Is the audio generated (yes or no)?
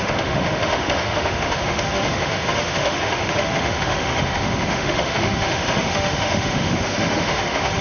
yes